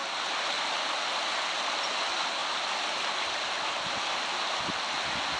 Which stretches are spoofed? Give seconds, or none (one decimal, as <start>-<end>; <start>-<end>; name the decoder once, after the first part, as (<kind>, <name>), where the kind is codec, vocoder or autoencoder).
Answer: none